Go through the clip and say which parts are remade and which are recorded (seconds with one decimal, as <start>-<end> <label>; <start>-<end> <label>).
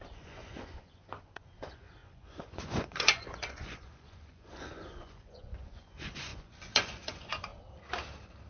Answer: 0.0-7.5 remade; 7.5-8.5 recorded